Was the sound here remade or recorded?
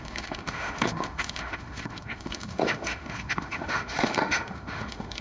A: remade